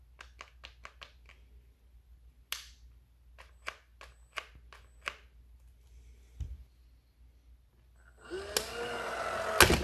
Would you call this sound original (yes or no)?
yes